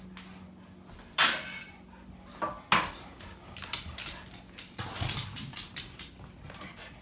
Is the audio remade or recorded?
recorded